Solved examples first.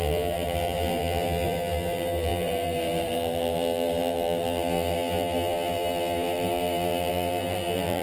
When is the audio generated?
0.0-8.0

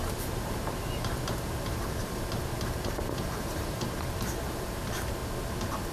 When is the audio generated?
0.0-5.2

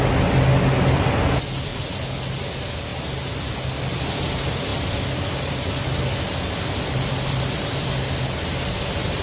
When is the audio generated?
none

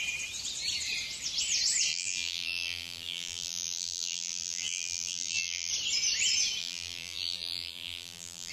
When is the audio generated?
1.9-5.7; 6.6-8.5

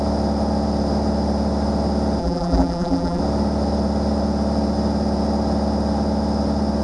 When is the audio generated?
2.2-3.2

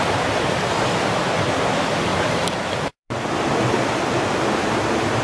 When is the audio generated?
2.1-3.5

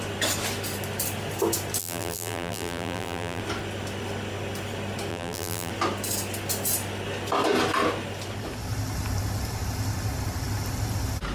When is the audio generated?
1.8-3.4; 5.1-5.7

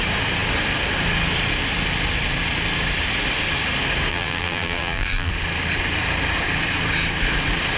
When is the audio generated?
4.1-5.3